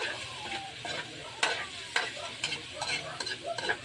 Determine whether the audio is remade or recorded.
remade